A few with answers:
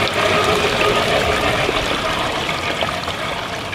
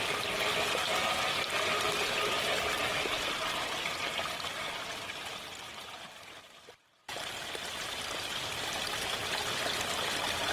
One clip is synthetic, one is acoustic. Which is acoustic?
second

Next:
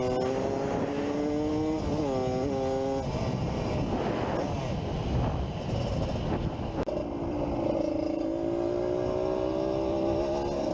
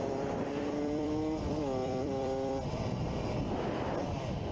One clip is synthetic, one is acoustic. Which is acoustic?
first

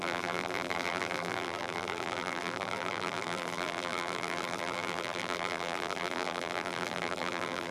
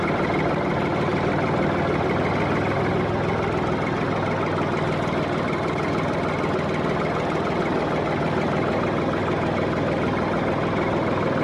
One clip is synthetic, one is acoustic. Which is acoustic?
second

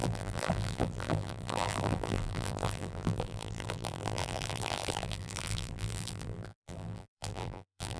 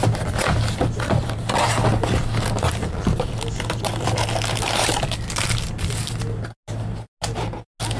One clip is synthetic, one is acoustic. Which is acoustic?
second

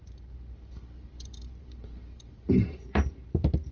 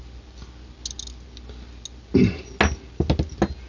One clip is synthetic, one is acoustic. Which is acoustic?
second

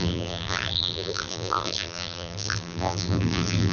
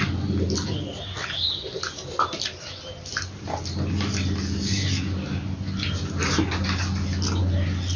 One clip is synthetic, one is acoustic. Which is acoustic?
second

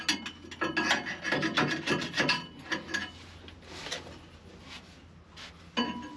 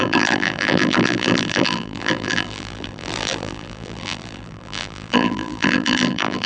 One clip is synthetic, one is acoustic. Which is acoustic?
first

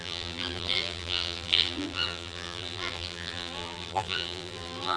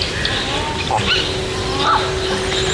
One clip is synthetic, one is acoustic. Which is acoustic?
second